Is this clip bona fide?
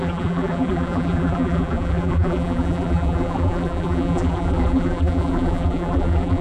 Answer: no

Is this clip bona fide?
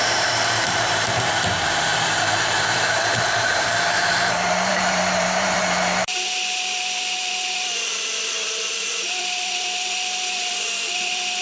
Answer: no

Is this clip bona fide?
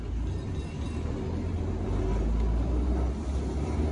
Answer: yes